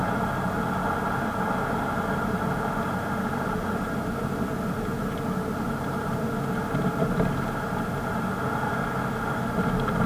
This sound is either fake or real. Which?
real